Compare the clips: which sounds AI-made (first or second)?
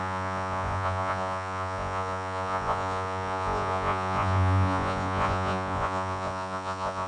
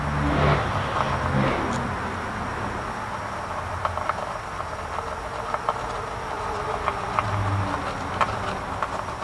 first